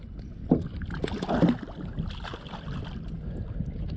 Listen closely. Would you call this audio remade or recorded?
recorded